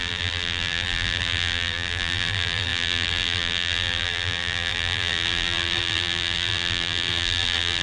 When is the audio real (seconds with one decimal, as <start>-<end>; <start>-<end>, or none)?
none